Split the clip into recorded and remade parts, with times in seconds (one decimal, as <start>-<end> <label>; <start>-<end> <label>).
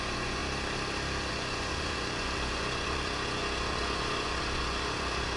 0.0-0.4 remade; 0.4-1.3 recorded; 1.3-5.4 remade